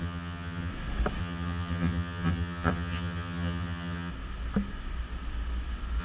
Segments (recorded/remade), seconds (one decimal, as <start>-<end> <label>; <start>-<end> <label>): 0.0-0.7 remade; 0.7-1.2 recorded; 1.2-4.1 remade; 4.1-6.0 recorded

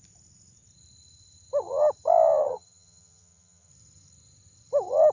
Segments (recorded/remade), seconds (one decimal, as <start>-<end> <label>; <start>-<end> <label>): 0.0-2.4 recorded; 2.4-3.7 remade; 3.7-5.1 recorded

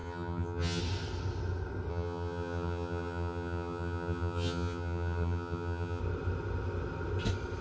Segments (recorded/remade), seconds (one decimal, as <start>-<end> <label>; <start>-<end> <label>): 0.0-0.8 remade; 0.8-1.9 recorded; 1.9-6.0 remade; 6.0-7.6 recorded

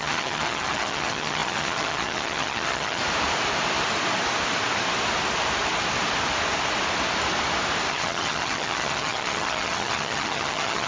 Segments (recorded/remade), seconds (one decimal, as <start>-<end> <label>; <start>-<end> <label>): 0.0-3.0 remade; 3.0-7.9 recorded; 7.9-10.9 remade

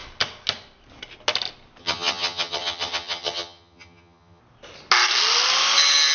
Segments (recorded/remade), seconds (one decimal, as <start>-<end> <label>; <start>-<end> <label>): 0.0-1.8 recorded; 1.8-4.4 remade; 4.4-6.1 recorded

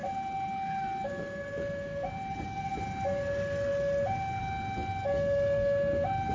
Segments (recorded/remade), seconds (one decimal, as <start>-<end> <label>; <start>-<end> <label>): 0.0-6.3 recorded

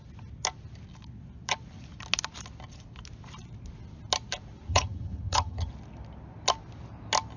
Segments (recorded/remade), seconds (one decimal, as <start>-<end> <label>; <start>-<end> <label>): 0.0-4.7 recorded; 4.7-5.7 remade; 5.7-7.4 recorded